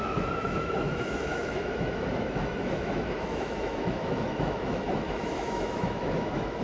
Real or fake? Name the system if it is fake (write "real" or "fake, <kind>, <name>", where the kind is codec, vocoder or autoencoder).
fake, autoencoder, DAC-VAE